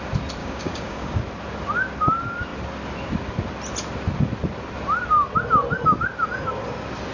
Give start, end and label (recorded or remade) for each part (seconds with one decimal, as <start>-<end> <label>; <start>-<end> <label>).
0.0-0.4 recorded; 0.4-1.2 remade; 1.2-7.1 recorded